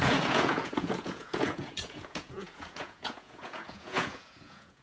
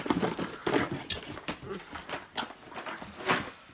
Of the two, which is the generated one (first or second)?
first